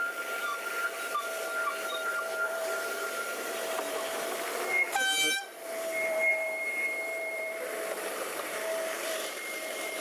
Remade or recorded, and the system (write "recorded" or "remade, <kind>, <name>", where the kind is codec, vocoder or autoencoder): remade, vocoder, BigVGAN v2